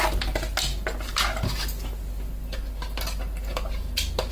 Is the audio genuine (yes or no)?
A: yes